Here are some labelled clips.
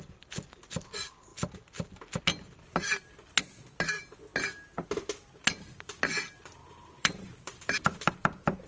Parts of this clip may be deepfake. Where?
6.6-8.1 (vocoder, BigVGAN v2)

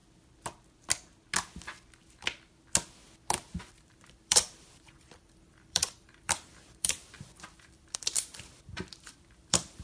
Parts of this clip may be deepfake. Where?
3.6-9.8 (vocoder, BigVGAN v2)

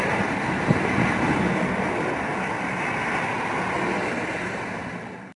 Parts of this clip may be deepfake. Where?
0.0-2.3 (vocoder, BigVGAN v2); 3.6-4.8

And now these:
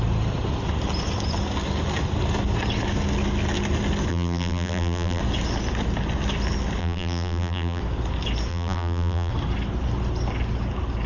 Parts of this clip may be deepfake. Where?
4.1-5.2 (vocoder, BigVGAN v2); 6.8-7.8; 8.5-9.3

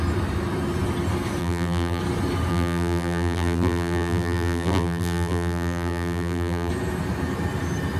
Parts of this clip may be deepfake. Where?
1.4-2.0 (vocoder, BigVGAN v2); 2.5-6.7

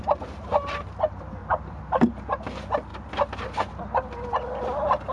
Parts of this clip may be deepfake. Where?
none

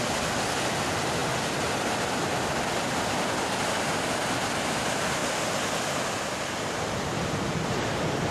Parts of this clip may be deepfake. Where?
5.2-8.3 (vocoder, BigVGAN v2)